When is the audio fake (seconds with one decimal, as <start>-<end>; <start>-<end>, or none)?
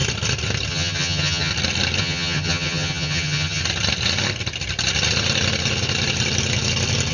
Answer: 0.7-1.5; 2.0-3.6